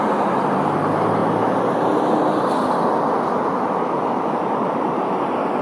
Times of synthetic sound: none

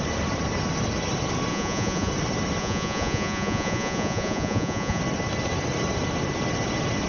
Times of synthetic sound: 1.5-2.1 (vocoder, Vocos); 2.6-5.0

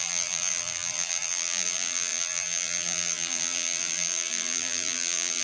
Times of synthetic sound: 0.0-5.4 (vocoder, BigVGAN v2)